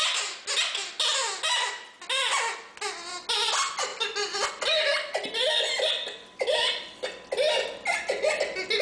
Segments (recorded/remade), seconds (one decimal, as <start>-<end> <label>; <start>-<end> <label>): 0.0-8.8 recorded